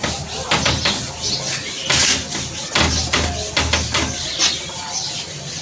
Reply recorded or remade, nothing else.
recorded